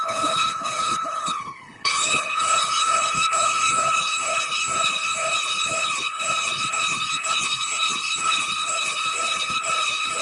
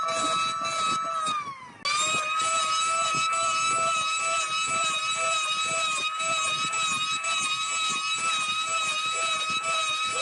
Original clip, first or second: second